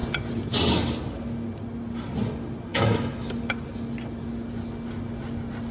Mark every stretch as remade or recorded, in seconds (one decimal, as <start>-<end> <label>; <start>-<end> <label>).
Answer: 0.0-2.7 recorded; 2.7-3.3 remade; 3.3-5.7 recorded